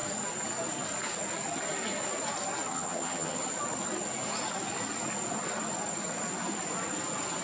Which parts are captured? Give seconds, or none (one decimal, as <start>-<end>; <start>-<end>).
0.0-2.7; 3.4-7.4